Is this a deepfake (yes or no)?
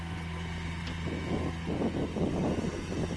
no